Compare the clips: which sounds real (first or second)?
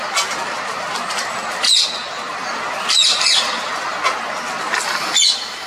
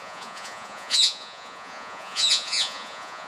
first